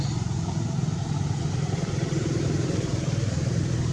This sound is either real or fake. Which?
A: real